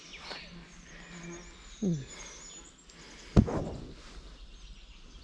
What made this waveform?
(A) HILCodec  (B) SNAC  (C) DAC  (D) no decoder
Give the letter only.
D